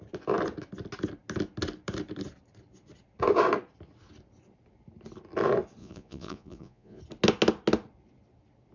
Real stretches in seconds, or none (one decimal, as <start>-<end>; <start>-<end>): 0.0-5.8; 7.0-8.7